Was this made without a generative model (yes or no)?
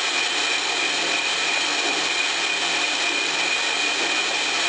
yes